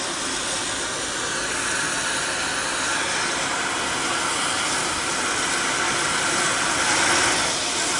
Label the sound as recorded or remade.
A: recorded